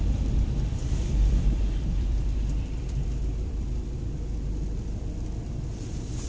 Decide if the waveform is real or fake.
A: fake